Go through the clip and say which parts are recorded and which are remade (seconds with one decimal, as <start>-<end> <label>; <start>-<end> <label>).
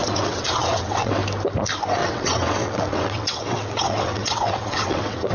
0.0-1.1 remade; 1.1-2.0 recorded; 2.0-5.3 remade